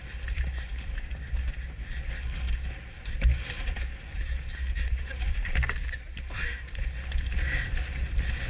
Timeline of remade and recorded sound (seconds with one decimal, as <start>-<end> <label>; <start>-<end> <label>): 0.0-8.5 recorded